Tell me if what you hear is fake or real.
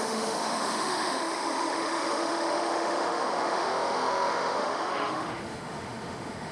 fake